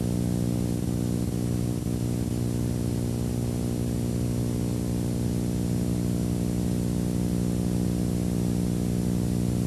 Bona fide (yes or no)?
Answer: yes